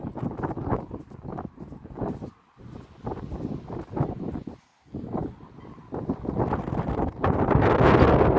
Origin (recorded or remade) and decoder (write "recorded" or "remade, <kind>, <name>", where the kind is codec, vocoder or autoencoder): recorded